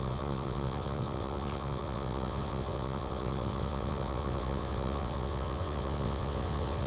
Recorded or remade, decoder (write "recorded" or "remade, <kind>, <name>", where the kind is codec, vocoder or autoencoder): remade, vocoder, WaveNeXt